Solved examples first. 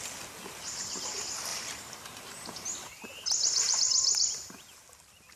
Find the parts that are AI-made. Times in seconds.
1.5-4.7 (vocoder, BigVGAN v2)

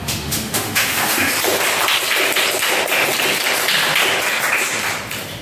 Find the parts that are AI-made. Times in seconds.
0.0-1.3 (autoencoder, DAC-VAE)

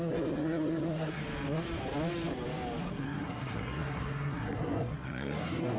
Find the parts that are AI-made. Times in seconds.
0.0-1.2 (codec, SNAC); 2.9-5.8

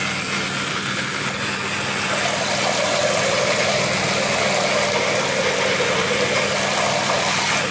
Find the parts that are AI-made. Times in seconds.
0.7-1.4 (codec, HILCodec)

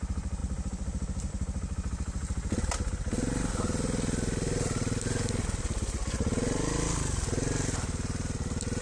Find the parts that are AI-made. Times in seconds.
none